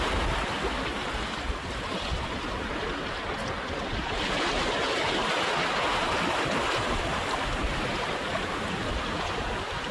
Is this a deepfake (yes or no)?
no